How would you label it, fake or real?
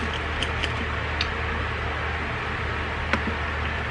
real